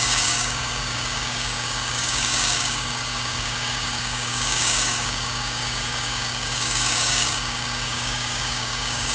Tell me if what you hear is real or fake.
fake